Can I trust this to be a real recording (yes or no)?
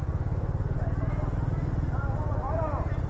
yes